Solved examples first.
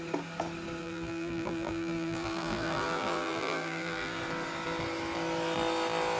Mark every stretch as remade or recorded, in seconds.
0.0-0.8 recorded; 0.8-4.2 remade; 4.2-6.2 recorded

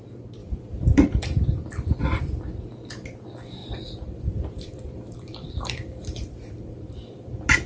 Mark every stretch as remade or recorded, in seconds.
0.0-0.4 recorded; 0.4-1.4 remade; 1.4-3.6 recorded; 3.6-7.7 remade

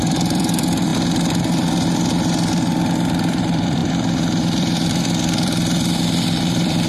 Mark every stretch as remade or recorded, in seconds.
0.0-0.9 remade; 0.9-3.4 recorded; 3.4-6.9 remade

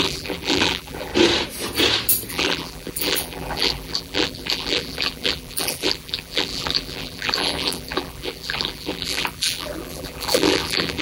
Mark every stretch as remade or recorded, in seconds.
0.0-1.1 remade; 1.1-2.3 recorded; 2.3-11.0 remade